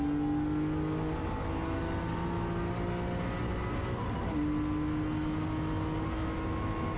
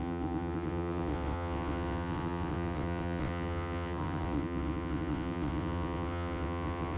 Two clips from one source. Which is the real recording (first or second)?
first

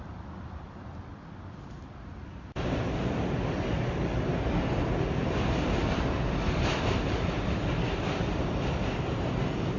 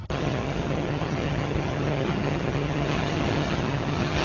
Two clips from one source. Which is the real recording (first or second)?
first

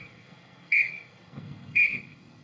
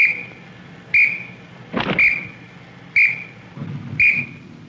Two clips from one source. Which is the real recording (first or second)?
second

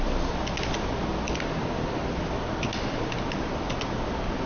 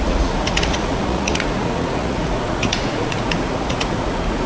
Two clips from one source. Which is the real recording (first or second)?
first